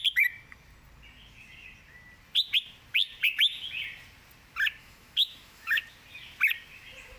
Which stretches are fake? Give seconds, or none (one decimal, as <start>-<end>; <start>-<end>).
4.8-5.8